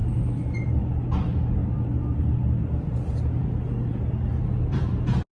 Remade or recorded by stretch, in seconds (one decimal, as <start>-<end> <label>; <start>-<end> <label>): 0.0-5.4 recorded